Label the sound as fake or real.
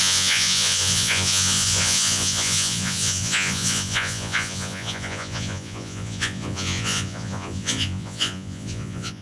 fake